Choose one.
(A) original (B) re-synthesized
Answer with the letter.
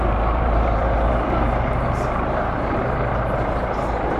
B